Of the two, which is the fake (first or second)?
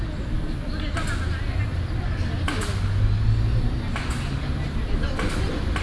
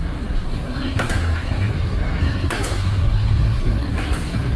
second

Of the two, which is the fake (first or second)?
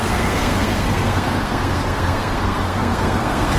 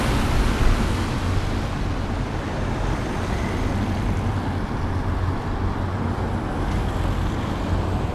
first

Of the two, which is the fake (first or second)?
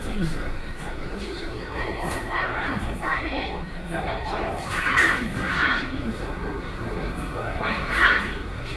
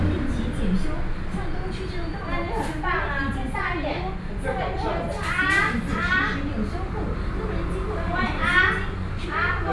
first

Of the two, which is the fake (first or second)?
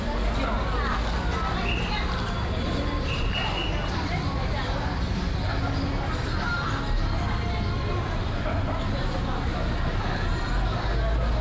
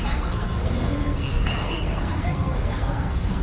second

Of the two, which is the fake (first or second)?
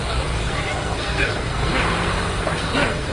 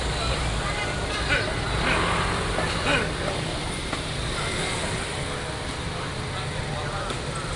first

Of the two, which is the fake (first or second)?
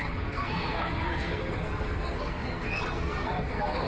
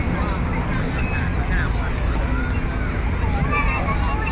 first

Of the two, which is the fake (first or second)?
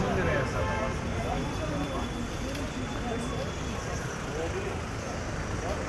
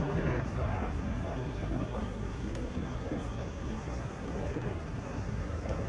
second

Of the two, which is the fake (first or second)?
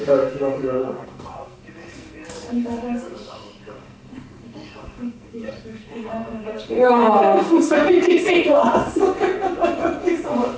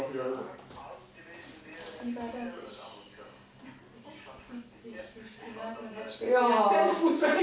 first